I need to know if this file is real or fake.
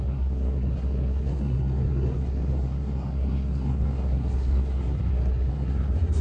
fake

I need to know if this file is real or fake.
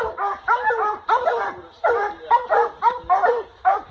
fake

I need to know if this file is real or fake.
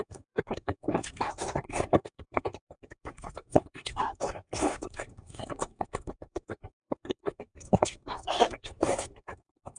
fake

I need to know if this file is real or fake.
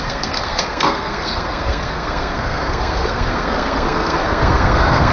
fake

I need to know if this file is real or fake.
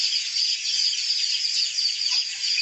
real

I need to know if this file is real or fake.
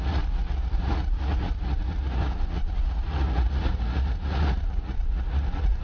fake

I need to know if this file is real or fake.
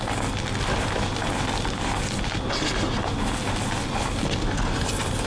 real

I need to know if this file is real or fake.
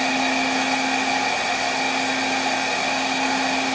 real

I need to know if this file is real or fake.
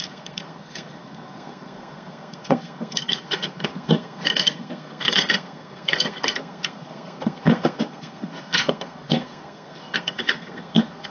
fake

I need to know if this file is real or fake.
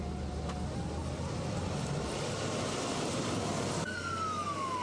real